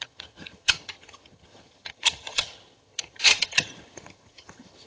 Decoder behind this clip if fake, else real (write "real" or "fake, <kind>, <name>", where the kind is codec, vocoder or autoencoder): fake, vocoder, HiFi-GAN